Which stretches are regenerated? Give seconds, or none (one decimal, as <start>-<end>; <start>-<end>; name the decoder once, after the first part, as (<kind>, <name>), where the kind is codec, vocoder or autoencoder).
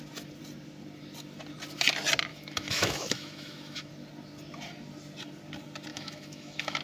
2.3-3.9 (autoencoder, DAC-VAE); 5.9-6.8